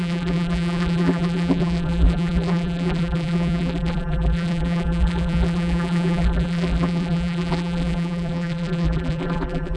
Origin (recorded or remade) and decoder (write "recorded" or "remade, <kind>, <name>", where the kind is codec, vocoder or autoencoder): remade, vocoder, BigVGAN v2